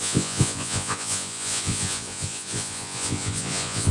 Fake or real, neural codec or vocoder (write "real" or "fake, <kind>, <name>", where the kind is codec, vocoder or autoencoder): fake, vocoder, Vocos